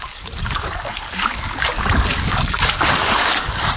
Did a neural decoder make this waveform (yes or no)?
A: yes